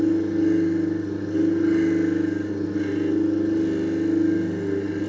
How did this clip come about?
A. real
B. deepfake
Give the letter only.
A